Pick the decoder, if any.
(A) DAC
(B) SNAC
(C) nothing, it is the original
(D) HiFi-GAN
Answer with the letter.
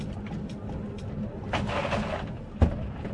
C